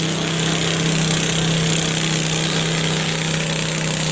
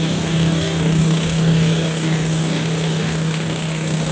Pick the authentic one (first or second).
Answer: first